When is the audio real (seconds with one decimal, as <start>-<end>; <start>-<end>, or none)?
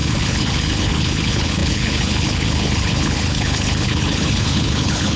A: none